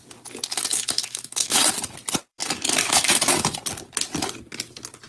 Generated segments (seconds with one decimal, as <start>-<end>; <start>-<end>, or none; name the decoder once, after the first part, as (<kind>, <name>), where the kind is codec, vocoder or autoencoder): 0.7-1.6 (autoencoder, DAC-VAE); 2.3-3.5

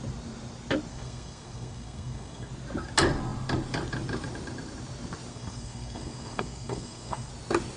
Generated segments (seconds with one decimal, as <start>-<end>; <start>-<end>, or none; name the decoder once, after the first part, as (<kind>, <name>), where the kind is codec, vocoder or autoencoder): 0.9-2.5 (codec, SNAC); 5.3-7.3

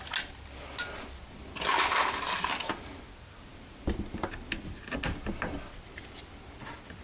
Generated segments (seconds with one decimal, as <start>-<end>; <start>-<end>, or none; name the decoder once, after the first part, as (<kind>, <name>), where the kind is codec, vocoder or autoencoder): none

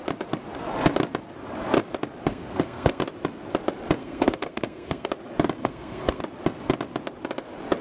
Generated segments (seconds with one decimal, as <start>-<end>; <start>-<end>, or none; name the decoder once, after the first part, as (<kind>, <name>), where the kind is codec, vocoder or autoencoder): 2.3-3.0 (codec, SNAC); 4.0-5.1; 5.6-6.2

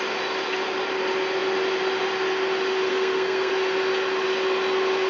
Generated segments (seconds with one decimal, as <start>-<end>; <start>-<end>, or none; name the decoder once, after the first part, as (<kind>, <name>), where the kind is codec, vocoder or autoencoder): 2.9-3.5 (codec, SNAC)

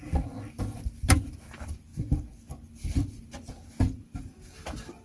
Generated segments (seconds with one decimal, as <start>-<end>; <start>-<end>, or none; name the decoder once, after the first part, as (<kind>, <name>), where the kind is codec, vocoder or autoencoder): none